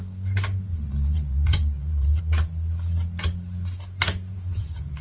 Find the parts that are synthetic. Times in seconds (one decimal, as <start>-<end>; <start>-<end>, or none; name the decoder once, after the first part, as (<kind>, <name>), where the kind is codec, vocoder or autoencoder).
0.7-2.2 (vocoder, Vocos); 4.3-5.0